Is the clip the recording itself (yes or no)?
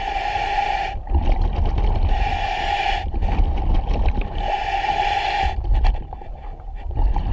yes